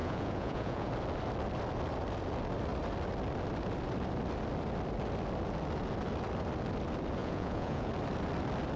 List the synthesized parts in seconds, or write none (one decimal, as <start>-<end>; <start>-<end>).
0.0-0.9; 7.2-7.9